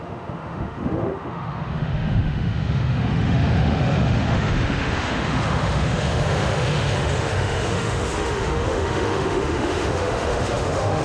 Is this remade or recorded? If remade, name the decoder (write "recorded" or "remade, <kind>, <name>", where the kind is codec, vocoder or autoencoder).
remade, autoencoder, DAC-VAE